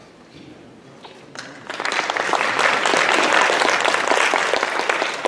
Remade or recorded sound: recorded